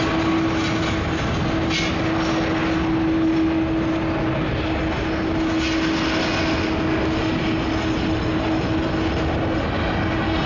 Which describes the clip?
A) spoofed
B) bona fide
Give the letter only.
B